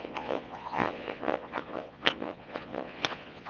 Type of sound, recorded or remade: remade